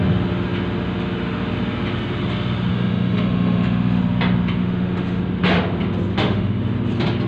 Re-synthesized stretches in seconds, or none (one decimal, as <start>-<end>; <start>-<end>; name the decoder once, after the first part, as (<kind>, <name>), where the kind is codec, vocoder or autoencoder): 2.7-4.0 (autoencoder, DAC-VAE); 4.6-5.2; 6.1-6.6